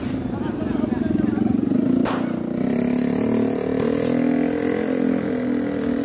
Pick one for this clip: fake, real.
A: real